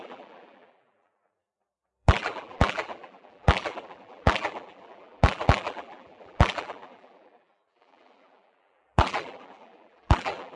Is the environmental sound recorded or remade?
remade